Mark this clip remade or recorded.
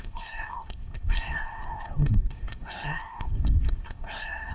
remade